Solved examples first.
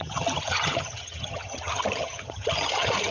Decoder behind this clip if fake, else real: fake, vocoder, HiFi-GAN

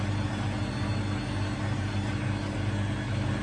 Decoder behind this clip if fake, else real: real